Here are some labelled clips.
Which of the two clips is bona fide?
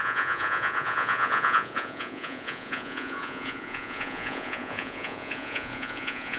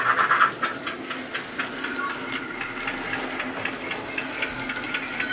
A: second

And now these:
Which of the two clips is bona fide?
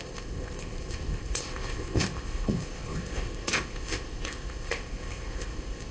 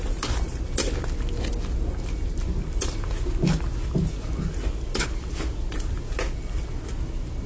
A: second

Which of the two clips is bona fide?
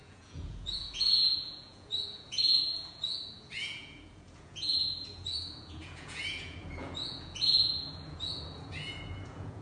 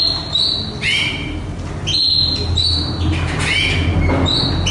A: second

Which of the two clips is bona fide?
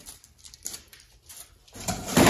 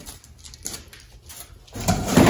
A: second